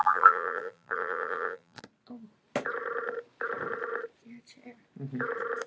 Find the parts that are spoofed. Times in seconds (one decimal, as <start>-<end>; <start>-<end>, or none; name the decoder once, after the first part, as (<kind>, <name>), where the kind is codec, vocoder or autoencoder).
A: 0.0-1.8 (vocoder, BigVGAN v2)

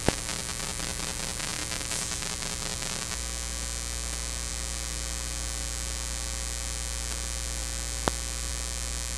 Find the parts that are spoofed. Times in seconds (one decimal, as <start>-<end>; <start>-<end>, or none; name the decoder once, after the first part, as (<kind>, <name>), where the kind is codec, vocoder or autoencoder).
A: none

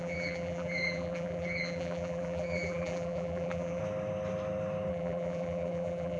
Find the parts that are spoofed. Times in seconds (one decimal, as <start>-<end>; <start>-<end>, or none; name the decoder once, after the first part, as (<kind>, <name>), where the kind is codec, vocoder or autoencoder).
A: 0.0-3.8 (vocoder, BigVGAN v2); 4.9-6.2

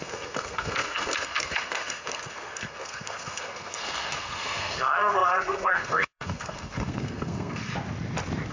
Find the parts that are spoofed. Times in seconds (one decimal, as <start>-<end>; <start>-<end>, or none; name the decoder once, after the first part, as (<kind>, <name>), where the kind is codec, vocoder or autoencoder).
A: 0.0-7.7 (codec, SNAC)

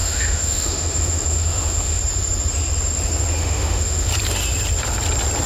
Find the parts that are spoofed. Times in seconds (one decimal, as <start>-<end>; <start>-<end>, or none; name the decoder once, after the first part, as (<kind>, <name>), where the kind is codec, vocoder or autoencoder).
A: 0.0-2.0 (autoencoder, DAC-VAE); 3.4-4.1